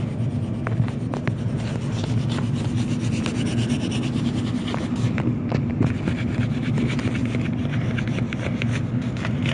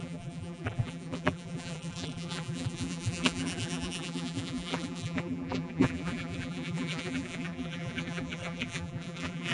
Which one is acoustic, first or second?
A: first